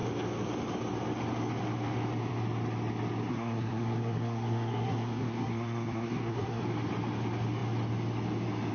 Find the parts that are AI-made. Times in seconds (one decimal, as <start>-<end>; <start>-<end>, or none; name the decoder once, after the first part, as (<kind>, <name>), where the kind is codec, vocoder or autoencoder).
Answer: 3.3-6.6 (codec, SNAC)